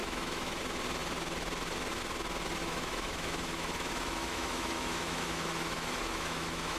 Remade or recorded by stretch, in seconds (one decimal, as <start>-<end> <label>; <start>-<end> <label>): 0.0-0.6 remade; 0.6-2.6 recorded; 2.6-6.8 remade